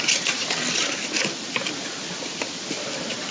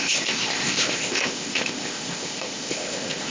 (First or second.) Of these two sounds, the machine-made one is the second